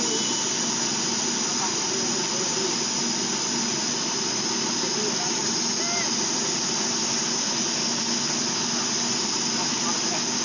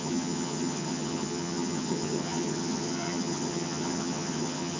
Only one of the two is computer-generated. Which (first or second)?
second